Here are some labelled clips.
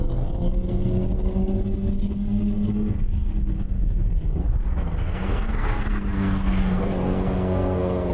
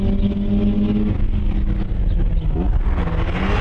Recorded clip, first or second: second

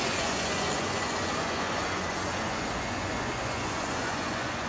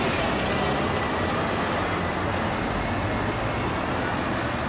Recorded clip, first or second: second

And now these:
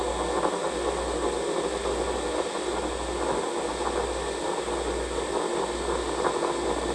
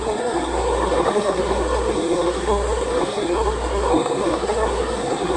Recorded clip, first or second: first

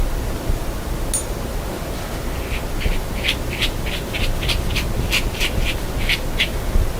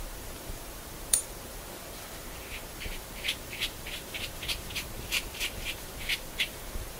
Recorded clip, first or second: first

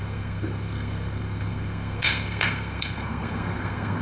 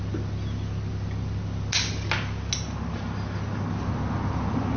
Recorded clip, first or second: second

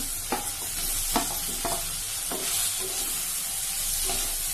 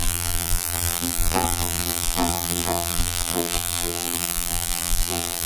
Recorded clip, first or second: first